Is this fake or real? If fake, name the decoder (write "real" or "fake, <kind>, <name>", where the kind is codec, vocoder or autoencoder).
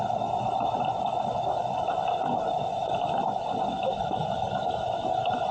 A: real